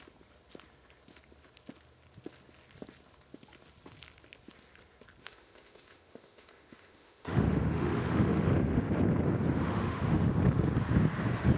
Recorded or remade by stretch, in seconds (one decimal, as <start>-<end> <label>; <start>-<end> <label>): 0.0-5.2 recorded; 5.2-8.9 remade; 8.9-9.6 recorded; 9.6-10.3 remade; 10.3-11.6 recorded